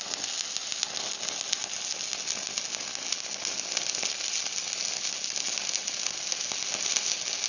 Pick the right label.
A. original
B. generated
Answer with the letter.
A